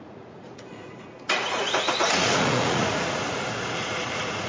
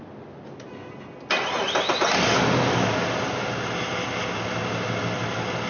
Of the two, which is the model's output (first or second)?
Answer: first